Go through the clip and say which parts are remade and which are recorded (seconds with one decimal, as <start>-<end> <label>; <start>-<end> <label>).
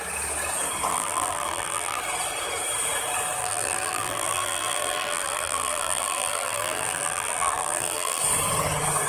0.0-0.9 recorded; 0.9-2.0 remade; 2.0-3.4 recorded; 3.4-8.2 remade; 8.2-9.1 recorded